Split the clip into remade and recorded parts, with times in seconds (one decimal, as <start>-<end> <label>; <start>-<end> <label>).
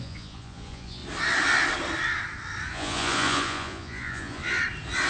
0.0-1.0 remade; 1.0-2.7 recorded; 2.7-4.4 remade; 4.4-5.1 recorded